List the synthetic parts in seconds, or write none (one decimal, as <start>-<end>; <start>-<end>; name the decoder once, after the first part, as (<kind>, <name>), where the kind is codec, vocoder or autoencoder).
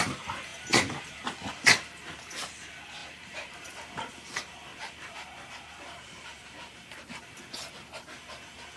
3.0-3.8 (vocoder, BigVGAN v2); 4.7-7.4